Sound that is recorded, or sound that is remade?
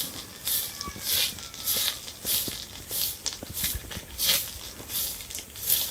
recorded